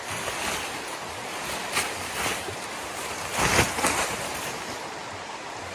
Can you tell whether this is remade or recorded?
recorded